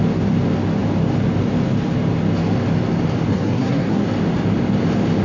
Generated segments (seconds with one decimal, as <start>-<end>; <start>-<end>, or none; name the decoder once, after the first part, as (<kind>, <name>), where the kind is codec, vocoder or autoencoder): 3.3-4.1 (codec, SNAC)